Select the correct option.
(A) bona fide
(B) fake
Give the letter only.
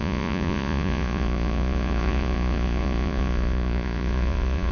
B